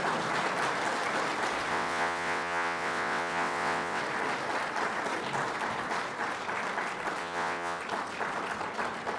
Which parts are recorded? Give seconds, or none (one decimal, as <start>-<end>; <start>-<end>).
0.0-1.7; 4.0-7.2; 7.8-9.2